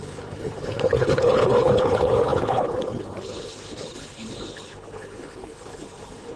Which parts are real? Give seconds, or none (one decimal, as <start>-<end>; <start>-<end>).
none